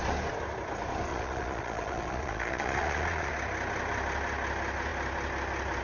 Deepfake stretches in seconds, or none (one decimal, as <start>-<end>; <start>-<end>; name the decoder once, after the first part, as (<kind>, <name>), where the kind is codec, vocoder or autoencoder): 1.1-3.3 (vocoder, Vocos)